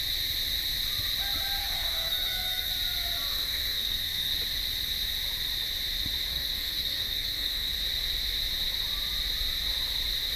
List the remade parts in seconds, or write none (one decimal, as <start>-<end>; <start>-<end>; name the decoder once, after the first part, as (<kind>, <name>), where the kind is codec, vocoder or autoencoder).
1.6-2.7 (codec, SNAC); 3.3-4.3; 6.3-7.8